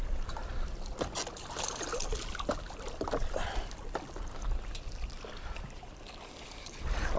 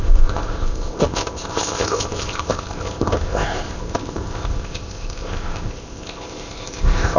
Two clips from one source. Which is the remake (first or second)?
second